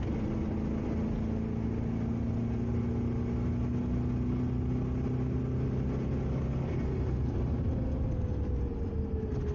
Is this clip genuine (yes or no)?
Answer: yes